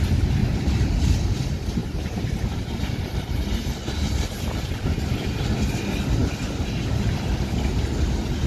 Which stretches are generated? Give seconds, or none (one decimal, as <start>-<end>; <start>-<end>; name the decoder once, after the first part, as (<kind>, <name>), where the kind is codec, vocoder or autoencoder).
0.4-1.3 (vocoder, BigVGAN v2); 1.8-5.0